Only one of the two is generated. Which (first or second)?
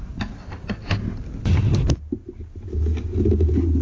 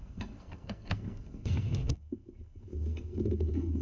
second